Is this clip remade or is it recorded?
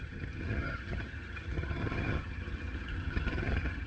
remade